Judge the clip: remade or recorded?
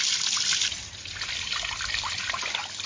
recorded